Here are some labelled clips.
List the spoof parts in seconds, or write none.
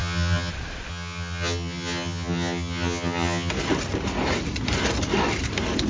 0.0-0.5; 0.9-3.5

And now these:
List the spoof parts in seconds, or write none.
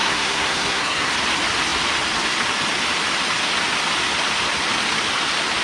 0.0-1.1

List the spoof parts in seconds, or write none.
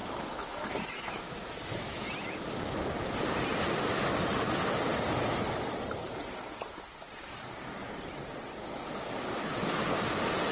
0.0-2.1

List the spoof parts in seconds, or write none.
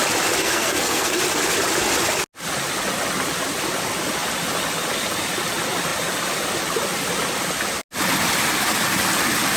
0.4-1.2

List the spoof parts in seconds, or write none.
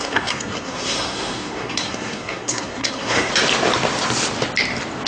0.0-3.3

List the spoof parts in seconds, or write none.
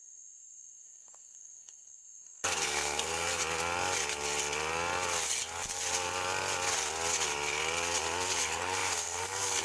0.0-3.4; 8.4-9.6